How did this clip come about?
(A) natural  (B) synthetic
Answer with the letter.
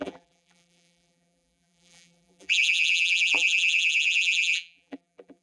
B